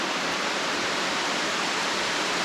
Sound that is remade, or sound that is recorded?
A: recorded